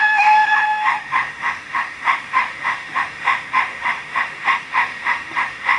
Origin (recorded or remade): remade